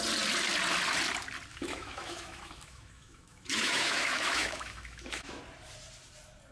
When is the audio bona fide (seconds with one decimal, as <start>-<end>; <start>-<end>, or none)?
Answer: 0.0-1.5; 5.4-6.5